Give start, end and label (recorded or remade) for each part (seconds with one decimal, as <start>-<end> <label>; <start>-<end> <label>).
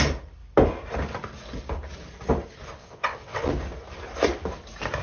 0.0-2.8 recorded; 2.8-3.5 remade; 3.5-5.0 recorded